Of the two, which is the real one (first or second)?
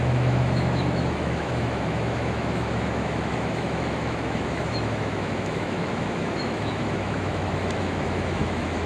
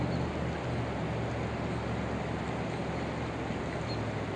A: second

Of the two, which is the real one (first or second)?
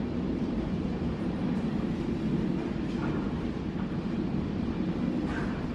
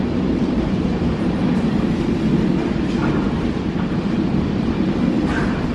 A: first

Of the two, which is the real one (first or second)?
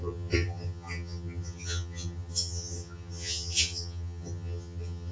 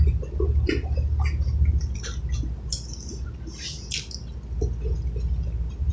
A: second